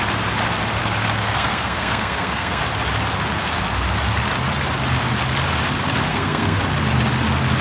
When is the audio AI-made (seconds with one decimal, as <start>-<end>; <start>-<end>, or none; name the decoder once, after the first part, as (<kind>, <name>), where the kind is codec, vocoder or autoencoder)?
0.8-2.6 (codec, SNAC); 6.1-6.6